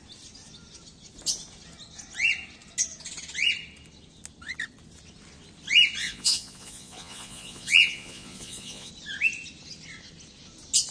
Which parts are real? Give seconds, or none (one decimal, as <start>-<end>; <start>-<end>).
0.0-6.0; 8.9-10.9